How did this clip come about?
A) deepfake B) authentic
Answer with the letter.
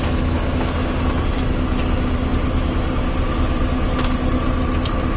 B